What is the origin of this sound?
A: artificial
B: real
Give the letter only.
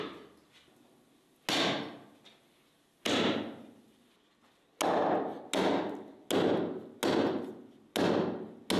B